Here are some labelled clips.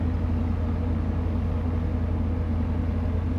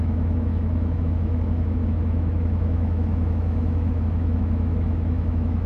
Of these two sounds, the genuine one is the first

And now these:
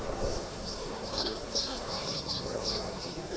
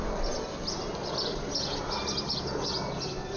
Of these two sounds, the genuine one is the second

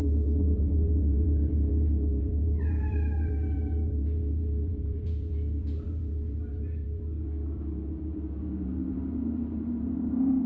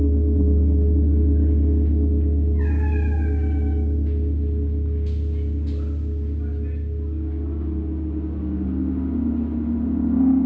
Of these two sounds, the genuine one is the second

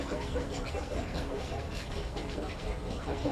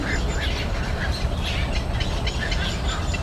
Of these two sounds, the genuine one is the second